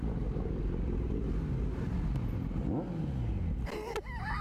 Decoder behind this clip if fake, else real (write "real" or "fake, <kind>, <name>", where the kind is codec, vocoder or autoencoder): real